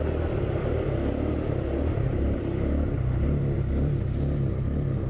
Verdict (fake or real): real